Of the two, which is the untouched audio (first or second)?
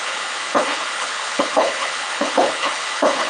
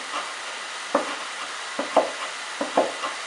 second